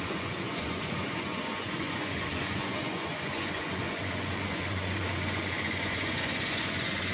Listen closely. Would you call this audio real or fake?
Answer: fake